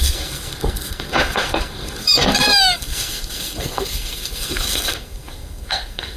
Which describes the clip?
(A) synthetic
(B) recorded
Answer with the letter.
A